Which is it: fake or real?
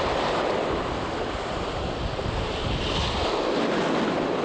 real